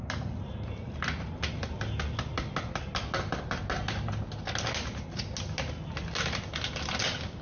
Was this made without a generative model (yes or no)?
yes